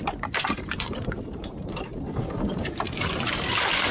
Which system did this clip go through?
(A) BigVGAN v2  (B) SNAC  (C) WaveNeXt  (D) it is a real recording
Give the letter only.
A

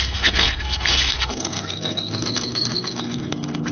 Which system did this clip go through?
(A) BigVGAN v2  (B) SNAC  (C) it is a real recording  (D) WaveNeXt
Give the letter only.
B